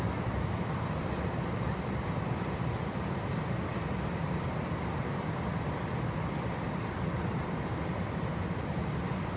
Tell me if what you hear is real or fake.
fake